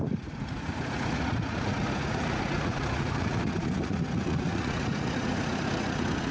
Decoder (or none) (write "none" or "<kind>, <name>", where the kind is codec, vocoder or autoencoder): vocoder, Vocos